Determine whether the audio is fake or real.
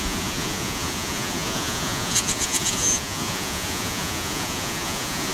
fake